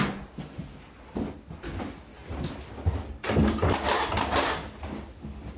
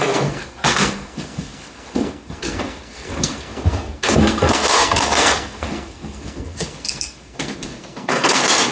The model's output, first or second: second